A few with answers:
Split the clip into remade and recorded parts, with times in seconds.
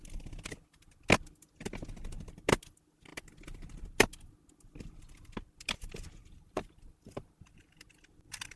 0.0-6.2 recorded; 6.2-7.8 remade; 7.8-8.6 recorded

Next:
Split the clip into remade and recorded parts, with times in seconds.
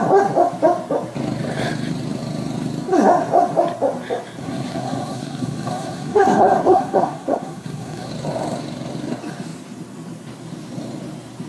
0.0-4.4 recorded; 4.4-8.1 remade; 8.1-11.5 recorded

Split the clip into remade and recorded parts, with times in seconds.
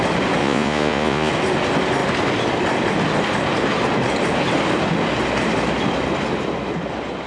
0.0-0.4 recorded; 0.4-1.3 remade; 1.3-7.3 recorded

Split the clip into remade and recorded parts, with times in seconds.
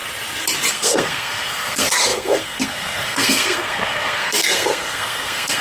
0.0-0.7 recorded; 0.7-5.6 remade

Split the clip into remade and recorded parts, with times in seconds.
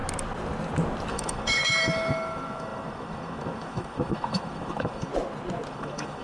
0.0-1.1 recorded; 1.1-5.1 remade; 5.1-5.7 recorded; 5.7-6.2 remade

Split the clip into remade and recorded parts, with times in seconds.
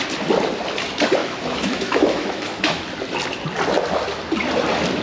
0.0-1.2 recorded; 1.2-2.8 remade; 2.8-5.0 recorded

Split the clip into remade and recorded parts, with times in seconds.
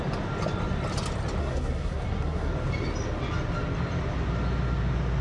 0.0-1.4 recorded; 1.4-2.5 remade; 2.5-5.2 recorded